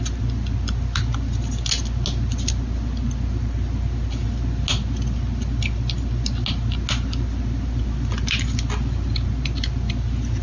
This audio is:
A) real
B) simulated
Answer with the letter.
A